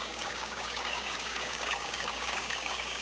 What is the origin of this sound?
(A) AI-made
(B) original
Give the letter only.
A